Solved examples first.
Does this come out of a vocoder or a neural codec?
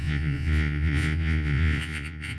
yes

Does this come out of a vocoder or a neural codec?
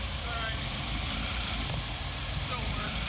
yes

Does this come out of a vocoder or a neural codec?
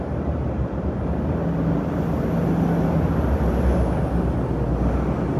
no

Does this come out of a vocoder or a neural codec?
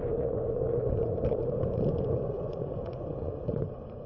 yes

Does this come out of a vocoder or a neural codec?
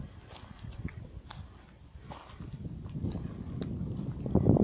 no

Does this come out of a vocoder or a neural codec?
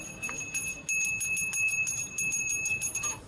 no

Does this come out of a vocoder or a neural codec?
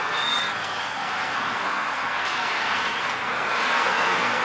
yes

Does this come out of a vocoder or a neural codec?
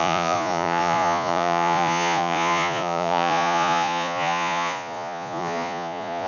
yes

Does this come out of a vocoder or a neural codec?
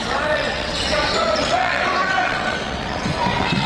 yes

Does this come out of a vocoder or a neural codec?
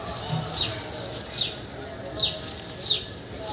no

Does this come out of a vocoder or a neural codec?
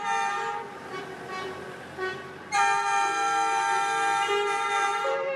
no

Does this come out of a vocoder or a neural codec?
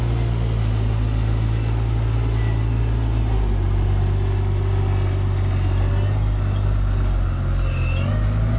no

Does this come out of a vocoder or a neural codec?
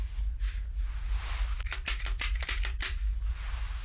no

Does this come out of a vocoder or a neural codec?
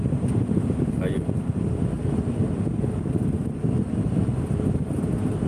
no